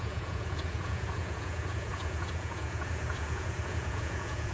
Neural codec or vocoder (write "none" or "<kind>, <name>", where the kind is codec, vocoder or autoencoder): vocoder, Vocos